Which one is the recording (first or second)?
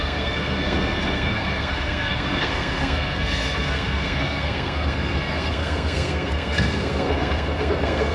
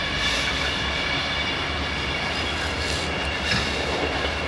second